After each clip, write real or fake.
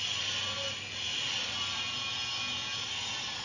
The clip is real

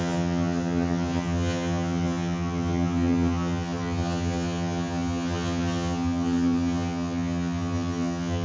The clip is fake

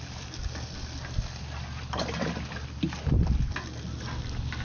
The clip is real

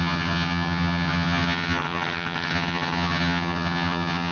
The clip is fake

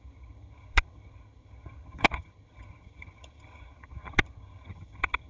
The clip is fake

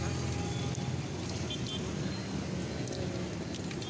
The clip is real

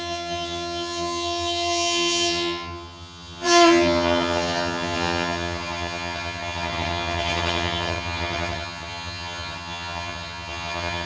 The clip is fake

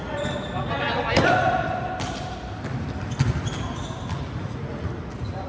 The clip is real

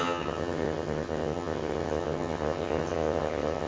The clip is fake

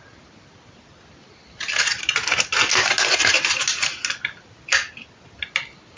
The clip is real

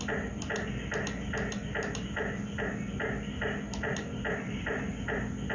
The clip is real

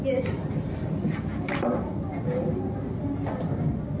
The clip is real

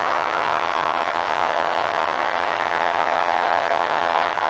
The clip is fake